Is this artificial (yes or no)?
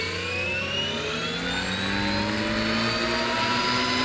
no